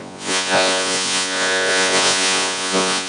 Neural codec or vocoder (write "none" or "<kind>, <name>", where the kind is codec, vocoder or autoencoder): vocoder, Vocos